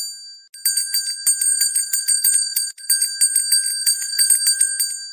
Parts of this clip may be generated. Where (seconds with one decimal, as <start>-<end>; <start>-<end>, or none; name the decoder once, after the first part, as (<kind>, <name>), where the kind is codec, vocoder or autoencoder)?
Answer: 1.5-2.9 (vocoder, Vocos); 3.8-4.3